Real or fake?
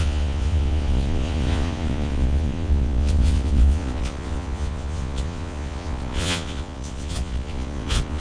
fake